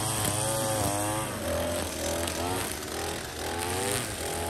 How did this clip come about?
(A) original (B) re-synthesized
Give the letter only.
A